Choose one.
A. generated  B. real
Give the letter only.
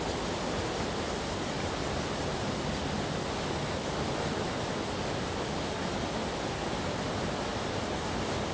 B